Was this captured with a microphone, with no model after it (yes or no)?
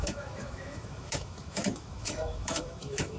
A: no